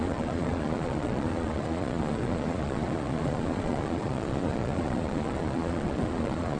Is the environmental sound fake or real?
fake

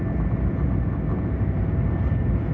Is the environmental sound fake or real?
real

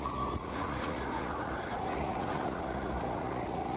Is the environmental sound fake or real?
fake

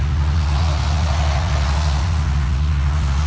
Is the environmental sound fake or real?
fake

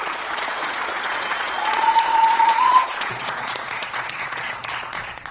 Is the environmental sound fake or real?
fake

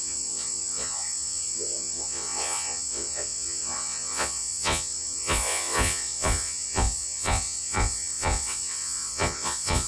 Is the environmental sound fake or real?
fake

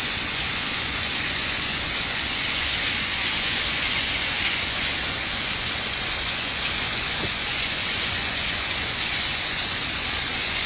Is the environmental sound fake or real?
fake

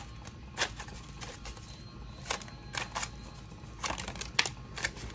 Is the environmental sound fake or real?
real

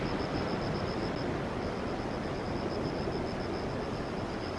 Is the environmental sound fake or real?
real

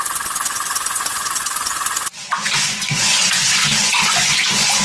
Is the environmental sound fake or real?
fake